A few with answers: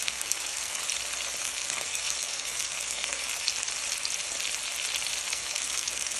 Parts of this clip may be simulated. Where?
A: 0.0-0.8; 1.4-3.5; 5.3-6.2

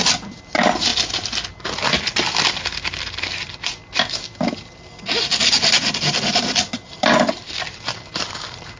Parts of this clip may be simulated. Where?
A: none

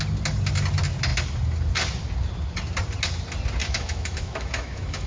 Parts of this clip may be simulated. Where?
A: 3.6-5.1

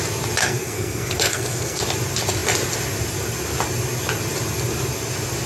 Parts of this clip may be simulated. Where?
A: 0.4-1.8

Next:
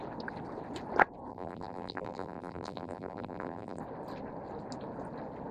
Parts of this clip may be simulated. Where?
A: 1.3-3.8

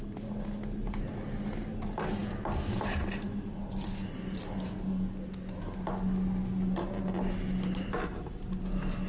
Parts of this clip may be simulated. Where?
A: none

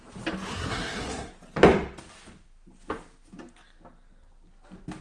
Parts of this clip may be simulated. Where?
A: 0.5-1.3

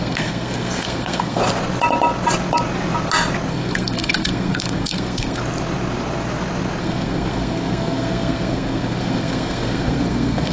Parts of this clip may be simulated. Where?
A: 0.0-1.4; 3.5-5.4; 6.8-10.5